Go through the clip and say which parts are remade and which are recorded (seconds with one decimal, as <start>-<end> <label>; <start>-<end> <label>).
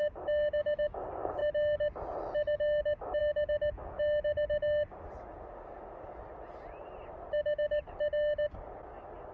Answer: 0.0-9.3 recorded